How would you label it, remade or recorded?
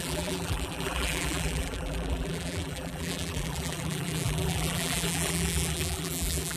remade